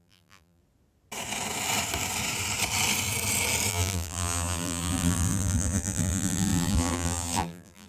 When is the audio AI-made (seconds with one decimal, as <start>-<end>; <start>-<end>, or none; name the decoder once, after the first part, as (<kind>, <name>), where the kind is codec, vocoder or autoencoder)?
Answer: 0.0-0.6 (vocoder, BigVGAN v2); 3.7-7.9